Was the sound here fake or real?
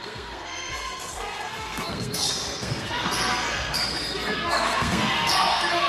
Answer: fake